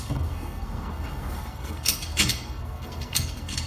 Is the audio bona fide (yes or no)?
no